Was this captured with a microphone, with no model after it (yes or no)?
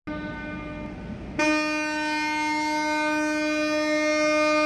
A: yes